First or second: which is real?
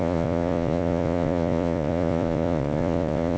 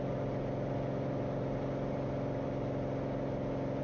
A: second